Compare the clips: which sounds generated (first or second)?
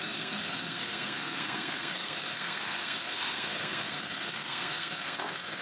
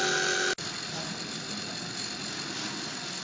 first